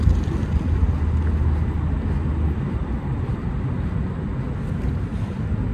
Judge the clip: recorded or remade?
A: recorded